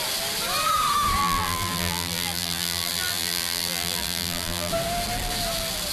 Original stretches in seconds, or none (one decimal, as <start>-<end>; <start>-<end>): 0.0-1.2; 4.7-5.9